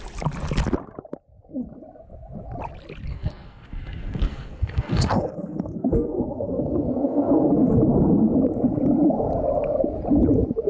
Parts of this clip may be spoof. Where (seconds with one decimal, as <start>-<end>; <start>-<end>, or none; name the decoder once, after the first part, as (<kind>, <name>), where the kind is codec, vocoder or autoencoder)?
3.1-7.5 (codec, SNAC)